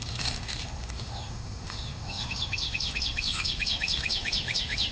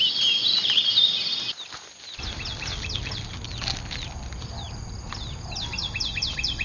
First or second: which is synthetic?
first